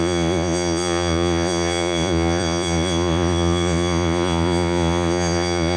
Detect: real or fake fake